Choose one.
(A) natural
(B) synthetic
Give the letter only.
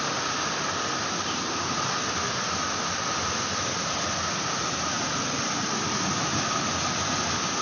A